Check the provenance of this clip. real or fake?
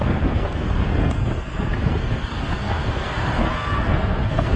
fake